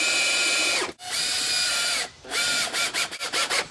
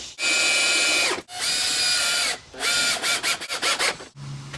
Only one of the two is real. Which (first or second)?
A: second